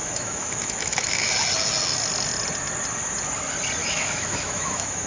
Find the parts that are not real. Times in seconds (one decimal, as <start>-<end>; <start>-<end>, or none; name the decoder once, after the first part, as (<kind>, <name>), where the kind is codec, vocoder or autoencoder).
0.0-1.3 (autoencoder, DAC-VAE); 3.8-5.1